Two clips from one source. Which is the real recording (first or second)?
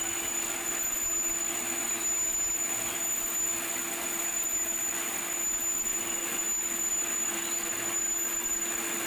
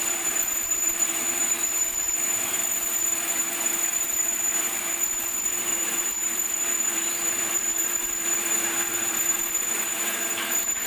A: first